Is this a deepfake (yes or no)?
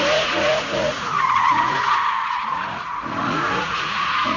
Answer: yes